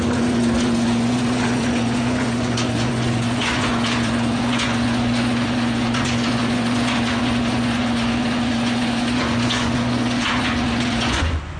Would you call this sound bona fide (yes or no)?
no